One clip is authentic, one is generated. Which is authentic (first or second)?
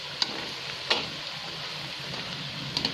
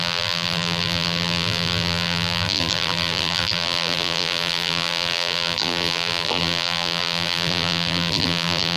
first